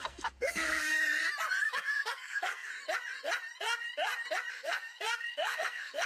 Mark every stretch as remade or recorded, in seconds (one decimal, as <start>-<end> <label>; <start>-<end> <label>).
0.0-0.9 remade; 0.9-1.6 recorded; 1.6-2.7 remade; 2.7-4.5 recorded; 4.5-6.1 remade